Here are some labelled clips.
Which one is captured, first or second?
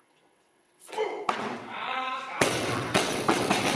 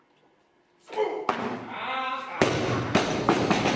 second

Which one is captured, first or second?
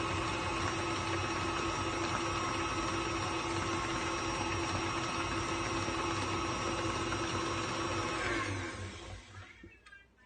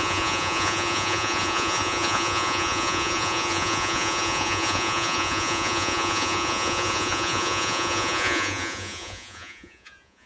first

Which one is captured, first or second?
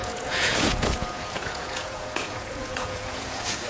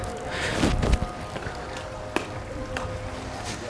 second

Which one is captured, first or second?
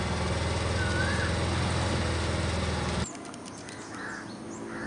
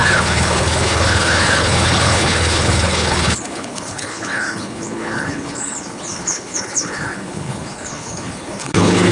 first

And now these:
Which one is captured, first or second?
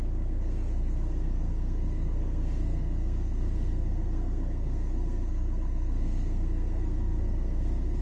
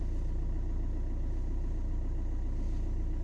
second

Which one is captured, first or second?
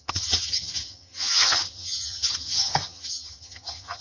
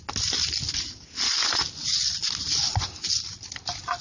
second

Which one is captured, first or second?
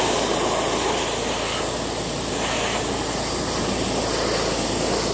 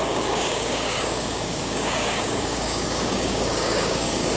first